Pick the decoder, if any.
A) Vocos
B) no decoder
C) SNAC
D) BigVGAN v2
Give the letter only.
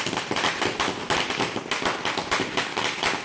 B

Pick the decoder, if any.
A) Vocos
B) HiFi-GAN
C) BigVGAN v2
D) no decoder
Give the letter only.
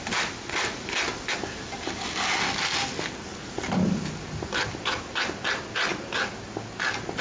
D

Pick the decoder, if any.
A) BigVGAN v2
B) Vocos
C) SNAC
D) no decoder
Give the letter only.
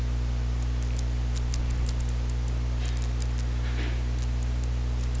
D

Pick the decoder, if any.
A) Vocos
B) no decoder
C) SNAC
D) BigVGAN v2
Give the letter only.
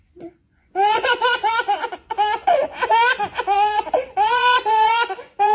A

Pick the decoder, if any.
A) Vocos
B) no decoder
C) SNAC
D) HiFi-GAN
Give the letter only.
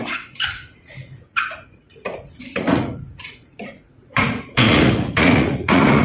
A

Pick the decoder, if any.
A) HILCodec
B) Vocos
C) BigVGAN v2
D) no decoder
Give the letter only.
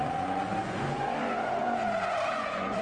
B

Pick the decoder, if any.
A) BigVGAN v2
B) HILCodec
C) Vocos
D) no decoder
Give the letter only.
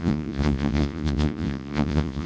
C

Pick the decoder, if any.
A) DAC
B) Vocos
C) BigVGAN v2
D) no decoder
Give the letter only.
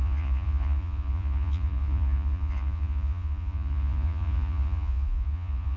B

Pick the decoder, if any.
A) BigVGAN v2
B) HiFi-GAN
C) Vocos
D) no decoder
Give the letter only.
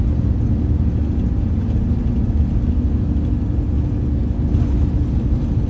D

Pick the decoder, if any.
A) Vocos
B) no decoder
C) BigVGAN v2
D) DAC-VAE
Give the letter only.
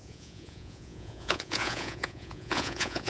A